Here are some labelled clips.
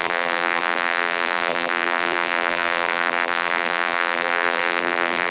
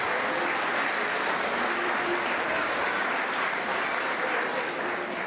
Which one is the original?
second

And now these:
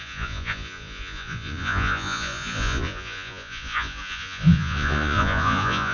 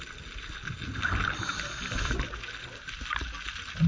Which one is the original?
second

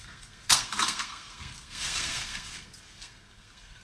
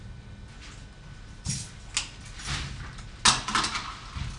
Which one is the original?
second